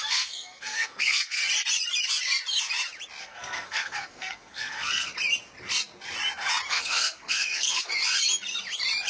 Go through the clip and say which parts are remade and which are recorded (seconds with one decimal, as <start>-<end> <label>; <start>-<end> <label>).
0.0-1.4 remade; 1.4-3.2 recorded; 3.2-5.1 remade; 5.1-6.7 recorded; 6.7-7.9 remade; 7.9-9.1 recorded